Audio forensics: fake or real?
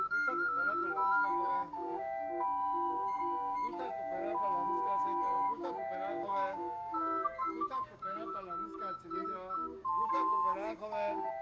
fake